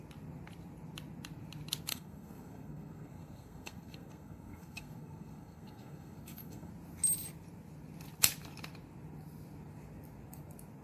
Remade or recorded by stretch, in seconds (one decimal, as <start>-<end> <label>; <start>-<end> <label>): 0.0-1.9 recorded; 1.9-6.7 remade; 6.7-10.8 recorded